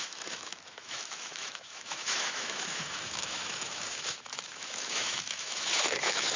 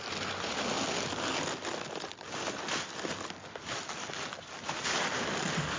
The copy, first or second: first